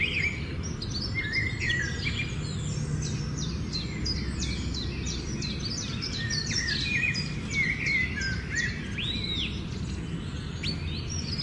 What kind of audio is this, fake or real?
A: real